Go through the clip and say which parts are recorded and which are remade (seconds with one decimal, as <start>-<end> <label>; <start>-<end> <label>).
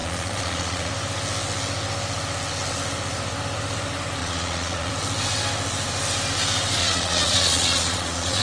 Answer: 0.0-0.9 remade; 0.9-4.2 recorded; 4.2-4.9 remade; 4.9-6.8 recorded; 6.8-8.4 remade